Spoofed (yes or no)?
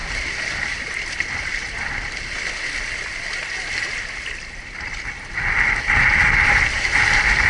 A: no